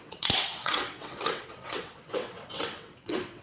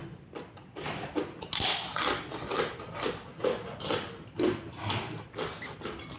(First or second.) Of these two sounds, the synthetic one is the first